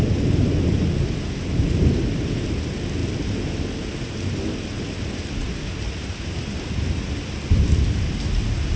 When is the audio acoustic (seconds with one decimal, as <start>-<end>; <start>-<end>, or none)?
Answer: 0.0-8.8